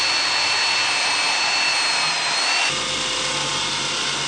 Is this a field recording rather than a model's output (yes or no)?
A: yes